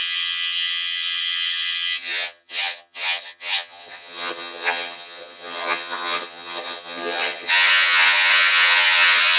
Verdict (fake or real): fake